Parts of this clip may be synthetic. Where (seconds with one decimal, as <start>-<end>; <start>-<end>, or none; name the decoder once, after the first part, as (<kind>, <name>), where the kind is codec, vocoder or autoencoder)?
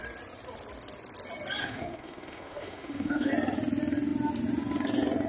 1.6-3.3 (autoencoder, DAC-VAE)